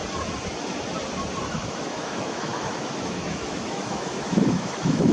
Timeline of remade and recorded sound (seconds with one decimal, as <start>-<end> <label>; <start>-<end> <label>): 0.0-1.5 recorded; 1.5-5.1 remade